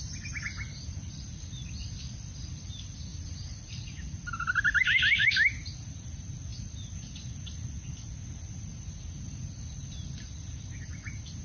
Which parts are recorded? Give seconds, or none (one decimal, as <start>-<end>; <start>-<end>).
none